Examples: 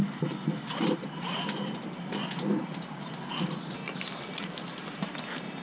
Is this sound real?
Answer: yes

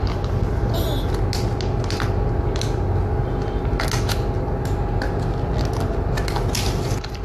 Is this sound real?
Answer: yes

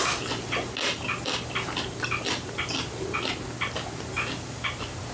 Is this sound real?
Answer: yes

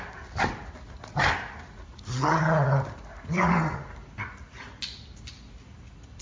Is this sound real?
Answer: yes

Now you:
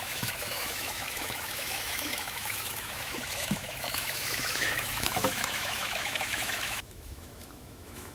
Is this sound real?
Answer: no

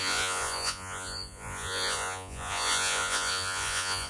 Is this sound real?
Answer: no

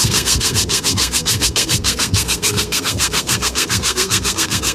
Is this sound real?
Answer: no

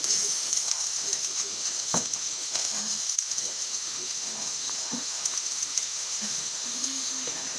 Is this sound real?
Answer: no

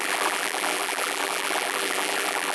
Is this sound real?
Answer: no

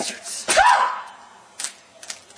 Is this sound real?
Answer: yes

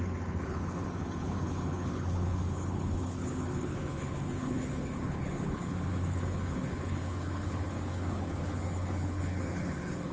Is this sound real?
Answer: no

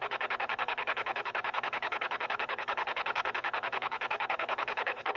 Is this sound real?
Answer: no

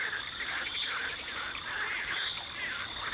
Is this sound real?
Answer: yes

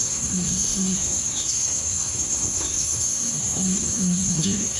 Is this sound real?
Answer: no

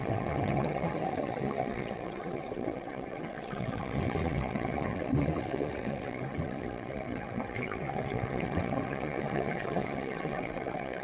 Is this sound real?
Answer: no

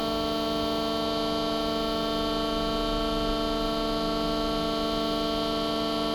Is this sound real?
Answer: yes